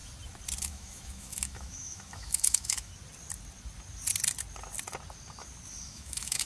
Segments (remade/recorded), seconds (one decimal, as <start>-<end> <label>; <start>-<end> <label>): 0.0-0.6 recorded; 0.6-2.9 remade; 2.9-5.8 recorded; 5.8-6.5 remade